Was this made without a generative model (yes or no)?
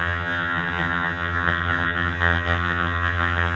no